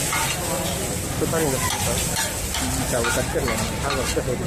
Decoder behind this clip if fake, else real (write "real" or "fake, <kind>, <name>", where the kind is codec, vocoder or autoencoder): real